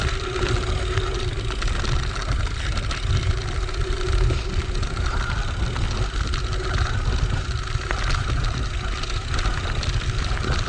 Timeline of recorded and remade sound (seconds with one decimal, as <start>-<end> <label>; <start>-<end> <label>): 0.0-10.7 recorded